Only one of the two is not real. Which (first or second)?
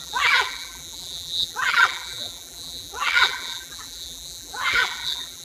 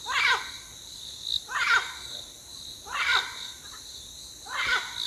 first